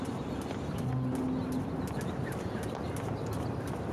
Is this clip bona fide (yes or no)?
yes